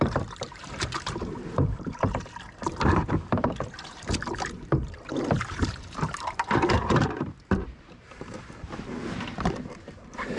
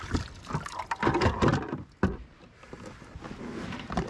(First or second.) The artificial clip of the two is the first